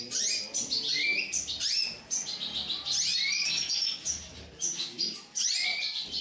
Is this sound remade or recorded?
recorded